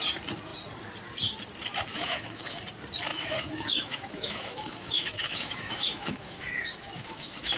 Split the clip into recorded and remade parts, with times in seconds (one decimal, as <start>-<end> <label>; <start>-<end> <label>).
0.0-1.9 recorded; 1.9-2.6 remade; 2.6-3.1 recorded; 3.1-7.6 remade